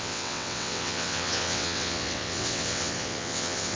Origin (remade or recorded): remade